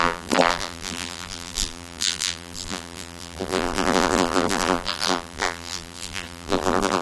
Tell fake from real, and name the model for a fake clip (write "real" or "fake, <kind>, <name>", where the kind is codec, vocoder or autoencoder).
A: fake, vocoder, BigVGAN v2